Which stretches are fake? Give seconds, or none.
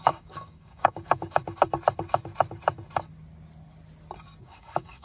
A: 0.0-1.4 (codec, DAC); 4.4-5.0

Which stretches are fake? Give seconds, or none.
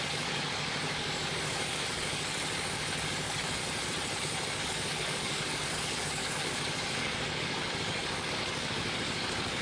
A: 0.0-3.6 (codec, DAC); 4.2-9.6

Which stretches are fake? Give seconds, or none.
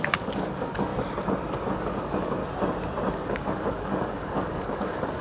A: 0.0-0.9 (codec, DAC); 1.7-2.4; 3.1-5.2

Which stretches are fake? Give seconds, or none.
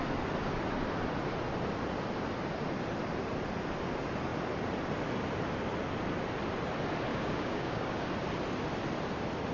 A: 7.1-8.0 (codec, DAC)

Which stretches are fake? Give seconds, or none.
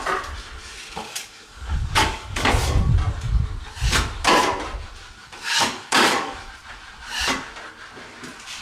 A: 0.6-2.5 (codec, DAC); 5.2-6.5